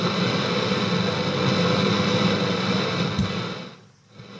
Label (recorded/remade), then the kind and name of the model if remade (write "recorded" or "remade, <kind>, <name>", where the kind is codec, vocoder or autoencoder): recorded